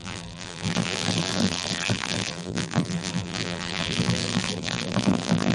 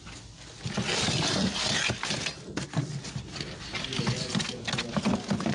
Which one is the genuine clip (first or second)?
second